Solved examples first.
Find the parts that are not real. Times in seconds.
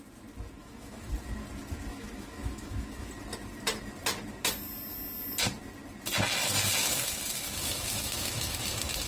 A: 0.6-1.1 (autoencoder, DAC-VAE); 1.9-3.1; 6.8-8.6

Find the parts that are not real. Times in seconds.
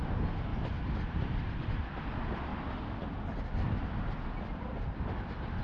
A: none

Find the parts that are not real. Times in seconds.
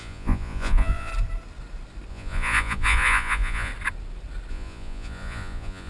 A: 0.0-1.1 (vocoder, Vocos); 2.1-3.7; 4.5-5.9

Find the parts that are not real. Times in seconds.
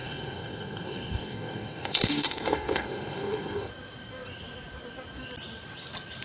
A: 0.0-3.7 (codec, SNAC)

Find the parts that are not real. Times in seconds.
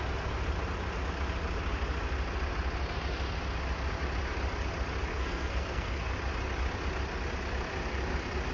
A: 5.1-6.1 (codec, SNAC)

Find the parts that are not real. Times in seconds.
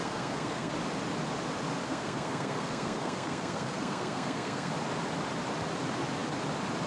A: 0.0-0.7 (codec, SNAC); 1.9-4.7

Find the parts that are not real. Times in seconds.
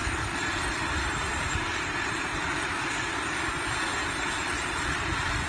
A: 0.0-2.4 (vocoder, BigVGAN v2); 4.4-5.5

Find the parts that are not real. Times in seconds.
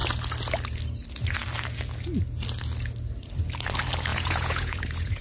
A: 4.1-5.2 (vocoder, Vocos)